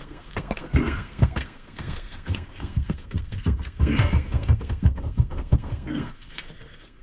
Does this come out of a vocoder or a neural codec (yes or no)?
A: yes